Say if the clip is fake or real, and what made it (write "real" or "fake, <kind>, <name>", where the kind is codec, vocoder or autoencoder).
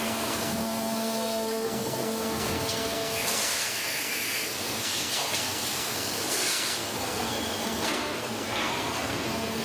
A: fake, codec, SNAC